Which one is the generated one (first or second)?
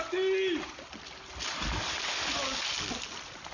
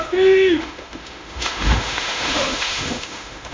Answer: second